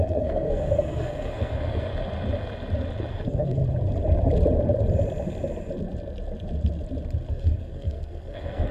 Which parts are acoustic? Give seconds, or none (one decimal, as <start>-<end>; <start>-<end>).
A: 1.9-3.1; 3.6-7.3